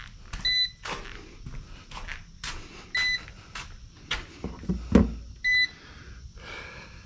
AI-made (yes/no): no